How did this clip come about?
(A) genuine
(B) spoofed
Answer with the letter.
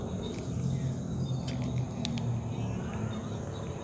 A